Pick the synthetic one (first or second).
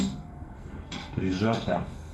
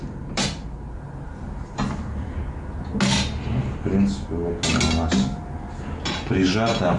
first